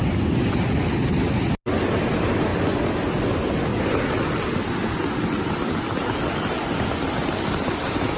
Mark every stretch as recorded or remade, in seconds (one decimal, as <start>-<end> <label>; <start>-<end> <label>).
0.0-8.2 recorded

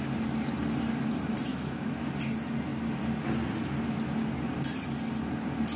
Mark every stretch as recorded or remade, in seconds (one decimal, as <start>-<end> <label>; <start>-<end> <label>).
0.0-1.5 recorded; 1.5-2.1 remade; 2.1-5.8 recorded

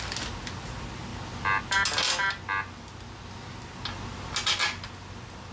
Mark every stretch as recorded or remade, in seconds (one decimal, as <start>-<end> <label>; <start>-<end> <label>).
0.0-5.5 recorded

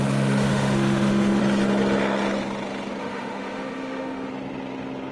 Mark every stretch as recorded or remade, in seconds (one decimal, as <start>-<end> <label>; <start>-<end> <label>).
0.0-0.5 recorded; 0.5-1.4 remade; 1.4-3.0 recorded; 3.0-4.3 remade; 4.3-5.1 recorded

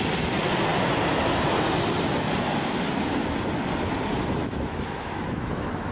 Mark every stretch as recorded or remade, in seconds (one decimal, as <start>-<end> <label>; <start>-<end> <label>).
0.0-4.4 recorded; 4.4-5.9 remade

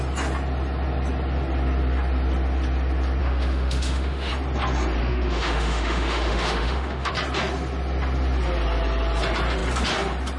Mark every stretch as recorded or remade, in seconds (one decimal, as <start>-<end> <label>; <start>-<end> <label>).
0.0-3.2 recorded; 3.2-4.3 remade; 4.3-5.0 recorded; 5.0-7.1 remade; 7.1-10.4 recorded

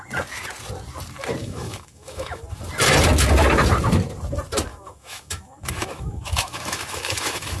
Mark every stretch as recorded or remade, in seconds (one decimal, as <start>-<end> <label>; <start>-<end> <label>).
0.0-1.4 recorded; 1.4-2.4 remade; 2.4-4.7 recorded; 4.7-7.6 remade